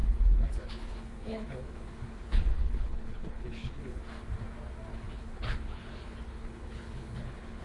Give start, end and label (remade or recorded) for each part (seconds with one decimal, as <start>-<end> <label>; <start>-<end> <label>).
0.0-4.0 remade; 4.0-4.9 recorded; 4.9-7.6 remade